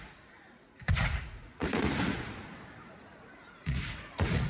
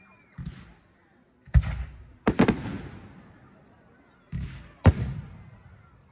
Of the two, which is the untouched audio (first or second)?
second